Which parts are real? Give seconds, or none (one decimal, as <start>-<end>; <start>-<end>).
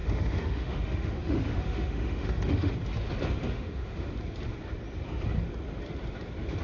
2.7-3.4; 4.1-6.6